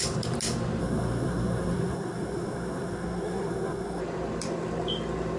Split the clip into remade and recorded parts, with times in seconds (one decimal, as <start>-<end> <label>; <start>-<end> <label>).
0.0-0.8 recorded; 0.8-4.0 remade; 4.0-5.4 recorded